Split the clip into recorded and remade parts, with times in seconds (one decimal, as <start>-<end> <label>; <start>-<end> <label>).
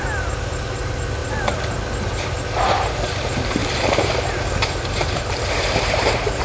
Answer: 0.0-1.2 remade; 1.2-2.1 recorded; 2.1-6.4 remade